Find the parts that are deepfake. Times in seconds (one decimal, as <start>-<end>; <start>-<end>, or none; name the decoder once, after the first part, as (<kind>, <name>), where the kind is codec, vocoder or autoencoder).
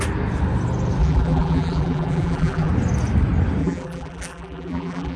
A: 1.0-2.7 (vocoder, BigVGAN v2); 3.6-5.2